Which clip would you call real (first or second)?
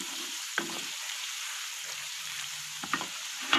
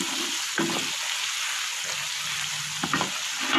second